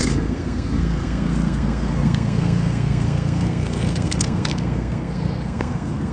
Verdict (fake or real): fake